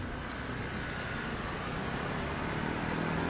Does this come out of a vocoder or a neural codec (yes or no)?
no